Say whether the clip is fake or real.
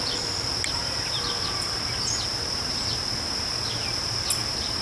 real